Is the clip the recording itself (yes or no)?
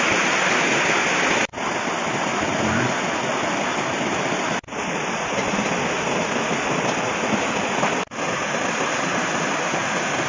yes